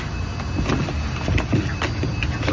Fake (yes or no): no